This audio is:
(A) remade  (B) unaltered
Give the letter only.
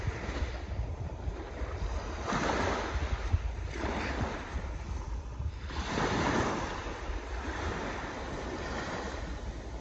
B